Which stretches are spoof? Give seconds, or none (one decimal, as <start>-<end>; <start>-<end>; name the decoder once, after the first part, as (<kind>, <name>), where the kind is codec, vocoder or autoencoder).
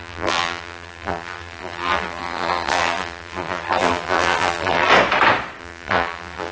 0.0-4.9 (vocoder, BigVGAN v2); 5.6-6.5